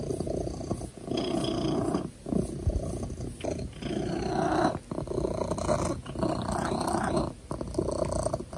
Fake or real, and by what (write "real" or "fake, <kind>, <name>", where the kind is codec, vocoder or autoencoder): real